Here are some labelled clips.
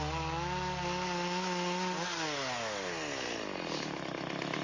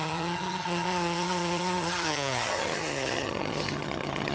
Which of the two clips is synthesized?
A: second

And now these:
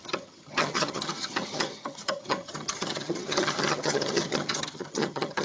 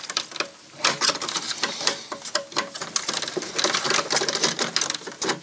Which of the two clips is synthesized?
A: first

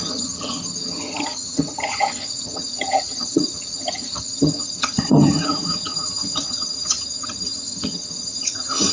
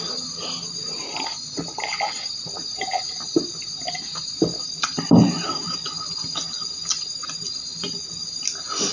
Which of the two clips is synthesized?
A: first